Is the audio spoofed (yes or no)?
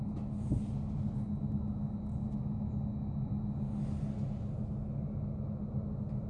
no